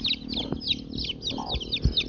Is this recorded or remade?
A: recorded